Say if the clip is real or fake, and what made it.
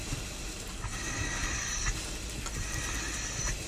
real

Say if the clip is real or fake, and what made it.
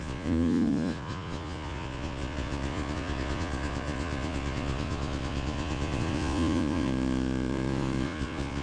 fake, vocoder, Vocos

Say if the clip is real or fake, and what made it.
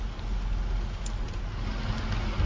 real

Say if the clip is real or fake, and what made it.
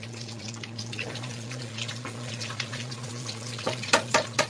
fake, vocoder, Vocos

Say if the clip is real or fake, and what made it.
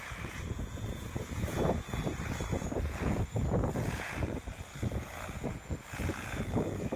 fake, vocoder, Vocos